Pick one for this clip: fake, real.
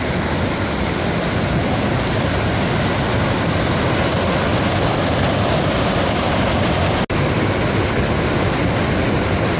real